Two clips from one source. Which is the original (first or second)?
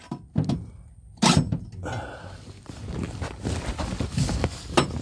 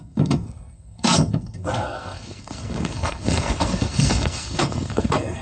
first